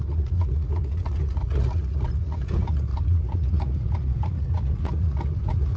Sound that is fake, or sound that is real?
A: fake